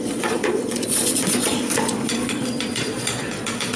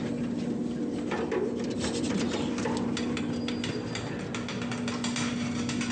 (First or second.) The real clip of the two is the second